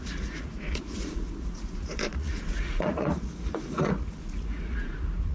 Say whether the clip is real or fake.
fake